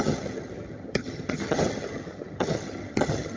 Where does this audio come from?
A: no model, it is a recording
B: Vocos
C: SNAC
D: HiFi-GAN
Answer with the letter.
D